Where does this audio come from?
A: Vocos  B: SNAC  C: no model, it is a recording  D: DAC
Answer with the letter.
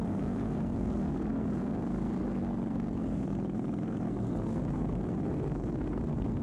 B